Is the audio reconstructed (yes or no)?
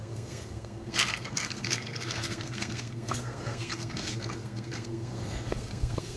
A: yes